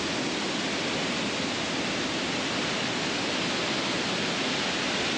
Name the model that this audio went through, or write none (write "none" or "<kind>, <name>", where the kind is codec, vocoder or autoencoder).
none